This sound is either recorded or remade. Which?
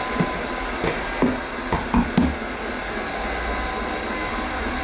recorded